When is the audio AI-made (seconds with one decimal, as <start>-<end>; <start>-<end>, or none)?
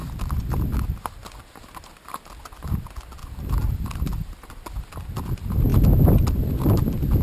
3.2-4.8